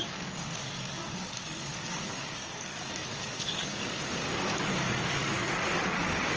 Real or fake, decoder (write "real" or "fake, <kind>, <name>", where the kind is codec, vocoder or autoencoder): fake, codec, DAC